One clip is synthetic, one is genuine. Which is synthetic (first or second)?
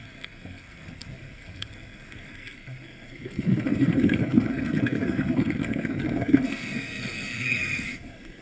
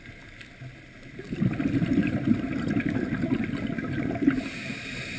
first